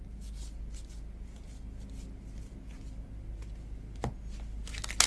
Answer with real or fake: real